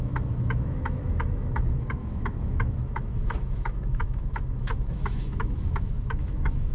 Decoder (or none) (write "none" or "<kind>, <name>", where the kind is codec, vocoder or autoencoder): autoencoder, DAC-VAE